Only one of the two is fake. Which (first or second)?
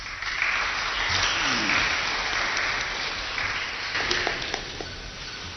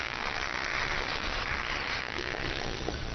second